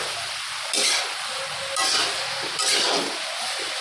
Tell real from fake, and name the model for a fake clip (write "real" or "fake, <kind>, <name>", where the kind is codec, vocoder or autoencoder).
real